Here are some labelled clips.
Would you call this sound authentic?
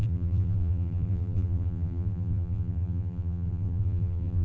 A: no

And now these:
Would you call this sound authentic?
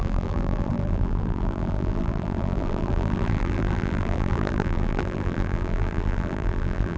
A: no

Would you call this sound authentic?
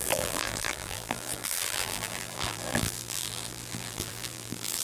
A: no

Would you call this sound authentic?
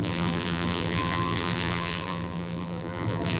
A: no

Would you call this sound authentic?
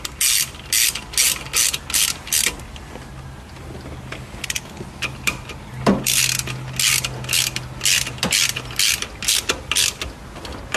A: yes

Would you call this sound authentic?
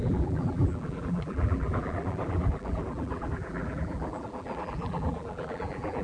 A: no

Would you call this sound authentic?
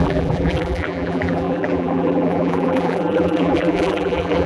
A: no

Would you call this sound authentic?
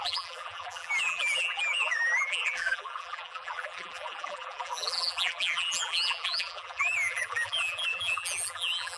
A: no